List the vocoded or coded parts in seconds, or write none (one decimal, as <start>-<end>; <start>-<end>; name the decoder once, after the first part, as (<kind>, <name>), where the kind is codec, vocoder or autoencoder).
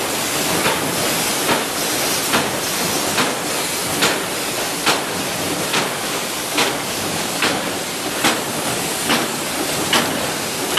5.7-7.7 (codec, DAC); 8.9-9.4